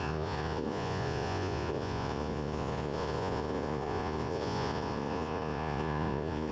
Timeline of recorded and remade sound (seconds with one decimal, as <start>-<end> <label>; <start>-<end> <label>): 0.0-6.5 remade